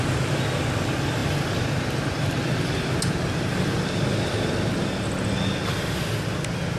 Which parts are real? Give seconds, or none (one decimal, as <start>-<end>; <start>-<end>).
0.0-6.8